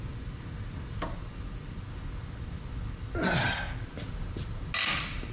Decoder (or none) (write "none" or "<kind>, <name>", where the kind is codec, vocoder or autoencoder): none